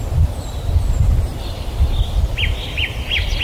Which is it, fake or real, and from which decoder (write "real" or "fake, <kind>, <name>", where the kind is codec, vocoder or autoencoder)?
real